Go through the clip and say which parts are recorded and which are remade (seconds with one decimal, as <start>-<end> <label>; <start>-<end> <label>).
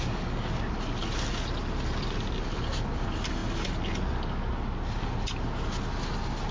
0.0-6.5 recorded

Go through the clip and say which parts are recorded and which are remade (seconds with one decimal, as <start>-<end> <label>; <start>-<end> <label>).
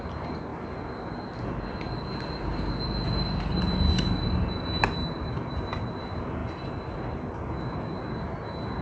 0.0-8.8 recorded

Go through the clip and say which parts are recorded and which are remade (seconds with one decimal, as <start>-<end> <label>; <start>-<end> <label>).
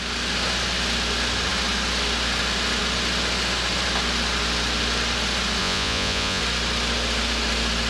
0.0-5.6 recorded; 5.6-6.4 remade; 6.4-7.9 recorded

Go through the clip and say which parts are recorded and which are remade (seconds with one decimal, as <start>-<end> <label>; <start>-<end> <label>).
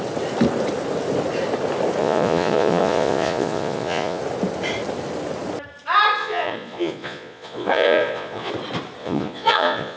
0.0-2.0 recorded; 2.0-4.2 remade; 4.2-6.2 recorded; 6.2-8.5 remade; 8.5-9.0 recorded; 9.0-10.0 remade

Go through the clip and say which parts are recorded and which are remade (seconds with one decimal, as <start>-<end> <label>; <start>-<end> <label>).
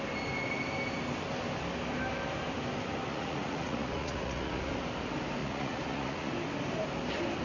0.0-3.1 recorded; 3.1-4.7 remade; 4.7-5.4 recorded; 5.4-6.3 remade; 6.3-7.4 recorded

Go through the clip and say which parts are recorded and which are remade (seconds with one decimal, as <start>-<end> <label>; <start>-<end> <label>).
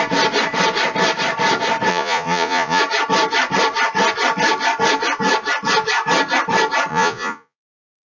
0.0-1.9 recorded; 1.9-2.8 remade; 2.8-6.9 recorded; 6.9-8.1 remade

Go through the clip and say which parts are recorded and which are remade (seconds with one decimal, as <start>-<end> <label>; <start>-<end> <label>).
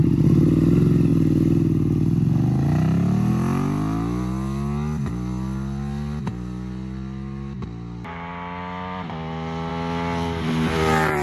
0.0-11.2 recorded